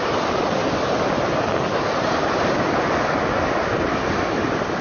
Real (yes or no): yes